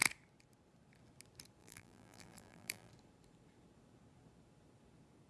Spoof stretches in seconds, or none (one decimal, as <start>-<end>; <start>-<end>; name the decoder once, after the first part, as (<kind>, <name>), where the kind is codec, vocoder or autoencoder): 1.6-2.9 (vocoder, BigVGAN v2)